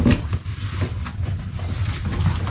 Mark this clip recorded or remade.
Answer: recorded